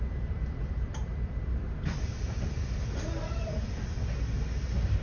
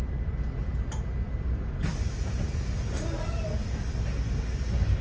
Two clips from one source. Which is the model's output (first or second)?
first